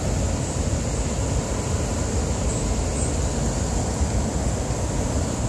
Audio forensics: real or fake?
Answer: real